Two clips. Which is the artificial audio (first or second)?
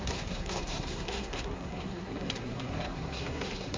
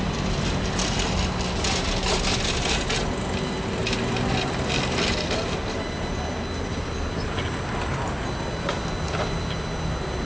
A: first